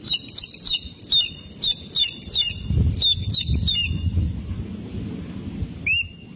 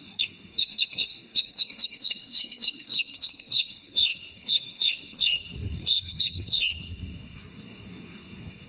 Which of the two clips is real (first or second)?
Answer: first